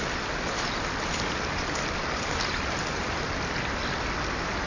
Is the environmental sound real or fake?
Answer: real